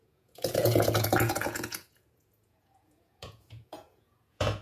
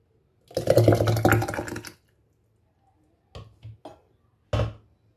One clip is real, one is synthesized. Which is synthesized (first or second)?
first